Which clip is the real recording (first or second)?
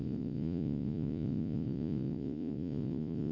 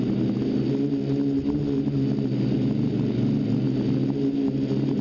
second